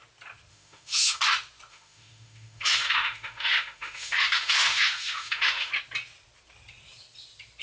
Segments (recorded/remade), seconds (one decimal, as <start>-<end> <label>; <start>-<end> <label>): 0.0-0.5 recorded; 0.5-1.2 remade; 1.2-1.7 recorded; 1.7-5.7 remade; 5.7-7.6 recorded